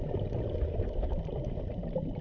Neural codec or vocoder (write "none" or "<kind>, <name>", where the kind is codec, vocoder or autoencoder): none